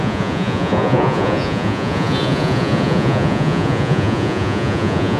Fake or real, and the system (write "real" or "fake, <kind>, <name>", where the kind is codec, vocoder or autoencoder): fake, vocoder, Vocos